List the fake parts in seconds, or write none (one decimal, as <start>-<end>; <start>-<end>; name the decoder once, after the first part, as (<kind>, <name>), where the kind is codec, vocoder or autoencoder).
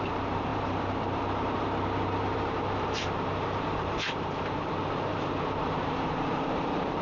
0.0-7.0 (vocoder, BigVGAN v2)